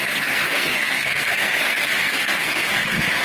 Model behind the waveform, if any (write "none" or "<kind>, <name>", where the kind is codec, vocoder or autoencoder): codec, SNAC